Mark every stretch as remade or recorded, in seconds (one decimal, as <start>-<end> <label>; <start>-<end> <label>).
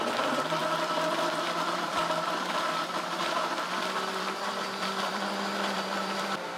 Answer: 0.0-6.6 remade